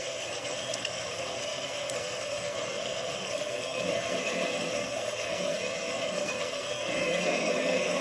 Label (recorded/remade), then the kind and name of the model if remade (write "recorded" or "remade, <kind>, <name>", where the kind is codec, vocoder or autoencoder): remade, codec, SNAC